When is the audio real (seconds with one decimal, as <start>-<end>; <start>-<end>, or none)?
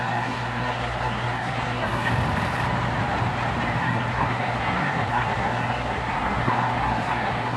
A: 2.1-3.8